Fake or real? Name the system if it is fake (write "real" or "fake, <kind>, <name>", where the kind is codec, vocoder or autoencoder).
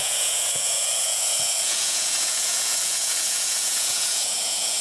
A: fake, vocoder, Vocos